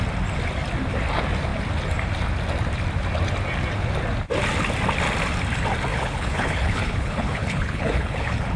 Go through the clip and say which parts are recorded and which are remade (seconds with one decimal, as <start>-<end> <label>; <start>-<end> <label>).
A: 0.0-5.9 recorded; 5.9-8.6 remade